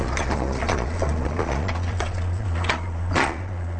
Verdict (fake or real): fake